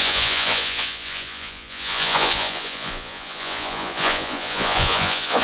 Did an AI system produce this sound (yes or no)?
yes